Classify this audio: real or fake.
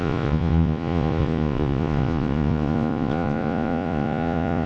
fake